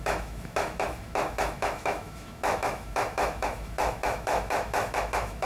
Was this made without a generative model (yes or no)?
no